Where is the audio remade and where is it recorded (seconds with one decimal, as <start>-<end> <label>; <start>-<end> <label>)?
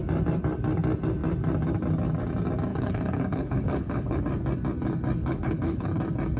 0.0-2.7 recorded; 2.7-4.2 remade; 4.2-5.2 recorded; 5.2-6.0 remade; 6.0-6.4 recorded